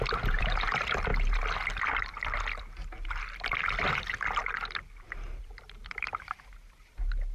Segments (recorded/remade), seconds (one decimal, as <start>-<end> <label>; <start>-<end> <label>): 0.0-1.1 remade; 1.1-5.4 recorded; 5.4-7.3 remade